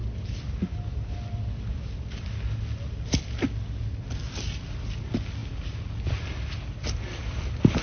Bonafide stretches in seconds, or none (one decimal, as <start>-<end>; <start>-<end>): 0.0-7.8